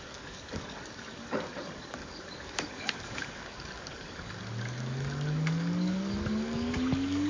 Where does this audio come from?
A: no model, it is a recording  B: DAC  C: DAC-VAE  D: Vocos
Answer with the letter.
B